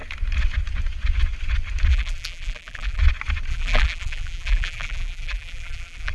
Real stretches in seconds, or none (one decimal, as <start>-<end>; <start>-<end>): 0.0-1.9; 3.0-3.5